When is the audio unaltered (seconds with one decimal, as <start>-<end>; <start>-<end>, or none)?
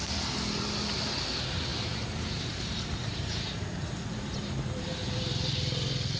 0.0-1.7; 5.4-6.2